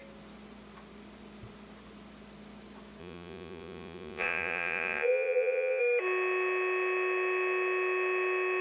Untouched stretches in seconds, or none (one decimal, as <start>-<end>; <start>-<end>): 0.0-3.0; 5.8-8.6